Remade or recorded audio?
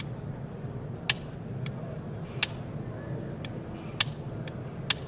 recorded